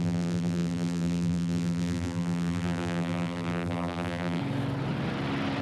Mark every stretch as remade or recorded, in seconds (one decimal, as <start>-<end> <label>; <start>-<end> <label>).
0.0-4.4 remade; 4.4-5.6 recorded